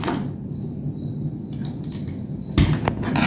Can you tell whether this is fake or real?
real